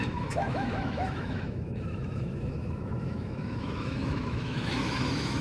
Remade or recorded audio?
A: remade